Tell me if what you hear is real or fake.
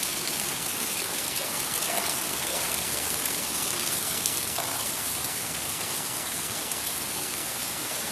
fake